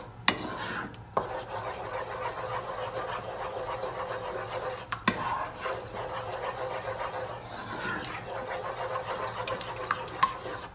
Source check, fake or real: real